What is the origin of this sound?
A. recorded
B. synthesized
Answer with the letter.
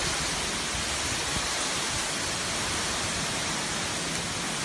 A